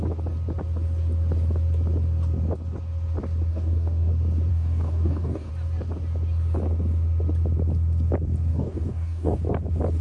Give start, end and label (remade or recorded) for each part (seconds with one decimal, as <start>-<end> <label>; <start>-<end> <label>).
0.0-3.5 recorded; 3.5-4.1 remade; 4.1-4.5 recorded; 4.5-5.5 remade; 5.5-8.5 recorded; 8.5-9.4 remade; 9.4-10.0 recorded